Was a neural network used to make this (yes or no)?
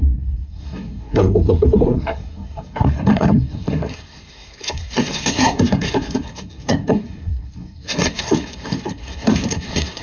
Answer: yes